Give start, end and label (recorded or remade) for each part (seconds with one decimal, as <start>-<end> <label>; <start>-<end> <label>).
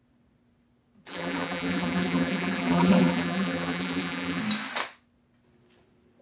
0.0-1.1 recorded; 1.1-4.4 remade; 4.4-6.2 recorded